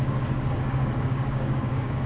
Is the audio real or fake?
fake